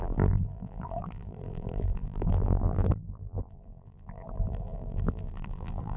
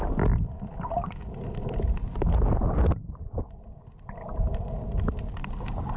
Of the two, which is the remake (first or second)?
first